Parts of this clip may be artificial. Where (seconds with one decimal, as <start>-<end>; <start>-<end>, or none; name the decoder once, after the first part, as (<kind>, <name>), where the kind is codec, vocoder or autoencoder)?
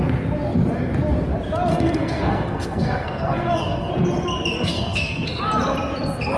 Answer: 1.7-3.9 (codec, SNAC); 4.6-5.4